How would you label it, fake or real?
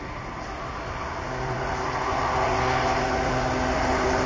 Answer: real